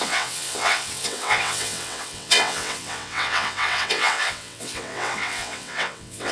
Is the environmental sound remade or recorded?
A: remade